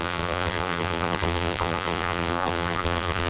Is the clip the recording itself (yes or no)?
no